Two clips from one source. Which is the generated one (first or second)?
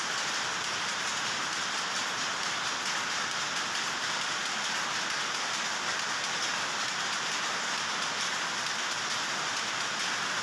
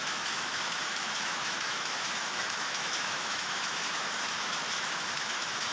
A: second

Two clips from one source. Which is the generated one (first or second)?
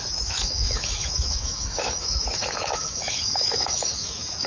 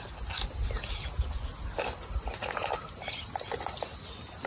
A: first